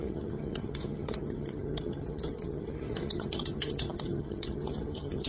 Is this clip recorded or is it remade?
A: remade